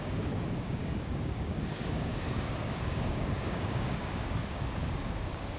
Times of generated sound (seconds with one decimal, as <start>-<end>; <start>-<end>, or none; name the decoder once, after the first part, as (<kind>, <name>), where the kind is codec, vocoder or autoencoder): 0.0-5.6 (codec, DAC)